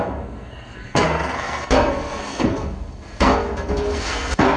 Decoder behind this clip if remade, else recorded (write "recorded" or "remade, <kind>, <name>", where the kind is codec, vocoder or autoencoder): remade, codec, SNAC